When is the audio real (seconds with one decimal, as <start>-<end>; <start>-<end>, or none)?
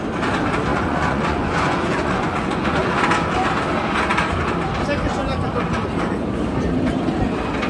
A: 0.0-0.7; 3.0-7.7